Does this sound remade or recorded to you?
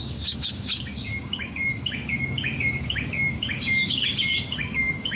remade